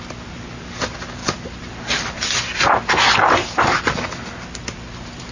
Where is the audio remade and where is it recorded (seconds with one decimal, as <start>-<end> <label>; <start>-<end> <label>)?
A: 0.0-5.3 recorded